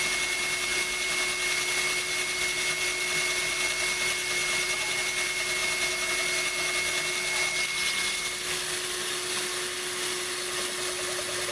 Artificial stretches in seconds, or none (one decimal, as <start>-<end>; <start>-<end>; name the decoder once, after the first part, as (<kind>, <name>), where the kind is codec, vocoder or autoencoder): none